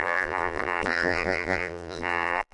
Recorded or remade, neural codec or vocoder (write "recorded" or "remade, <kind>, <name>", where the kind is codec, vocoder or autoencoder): remade, vocoder, BigVGAN v2